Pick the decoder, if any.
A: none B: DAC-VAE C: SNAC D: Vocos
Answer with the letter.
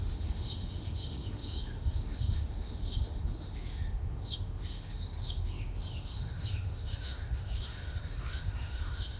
B